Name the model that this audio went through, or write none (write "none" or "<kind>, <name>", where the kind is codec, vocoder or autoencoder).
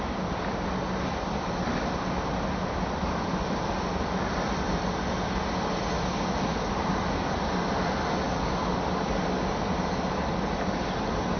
none